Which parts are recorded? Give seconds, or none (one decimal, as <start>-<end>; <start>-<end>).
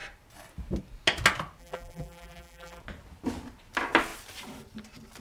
0.0-1.6; 2.8-5.2